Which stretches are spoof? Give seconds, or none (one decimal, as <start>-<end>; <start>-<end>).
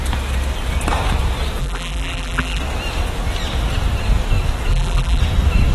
1.6-2.6; 4.7-5.2